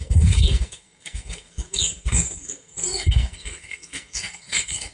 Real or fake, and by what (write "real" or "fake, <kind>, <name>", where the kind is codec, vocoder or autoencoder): fake, codec, SNAC